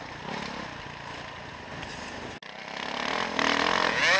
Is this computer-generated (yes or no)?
no